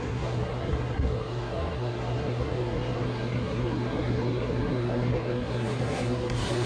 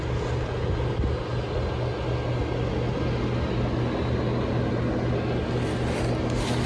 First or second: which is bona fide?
second